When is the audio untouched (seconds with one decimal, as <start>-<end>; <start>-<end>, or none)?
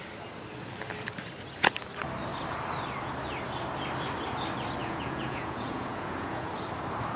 0.0-4.8; 6.5-7.2